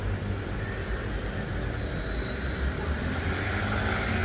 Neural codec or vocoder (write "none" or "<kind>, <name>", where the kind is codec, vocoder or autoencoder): none